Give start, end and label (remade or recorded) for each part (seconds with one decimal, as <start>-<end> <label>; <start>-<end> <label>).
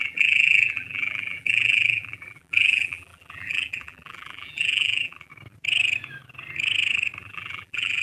0.0-5.3 remade; 5.3-7.2 recorded; 7.2-8.0 remade